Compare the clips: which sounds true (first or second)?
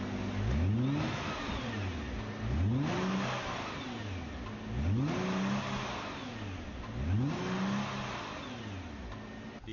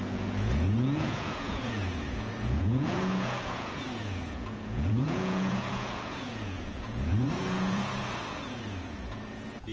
first